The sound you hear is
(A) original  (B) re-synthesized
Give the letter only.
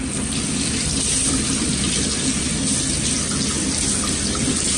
A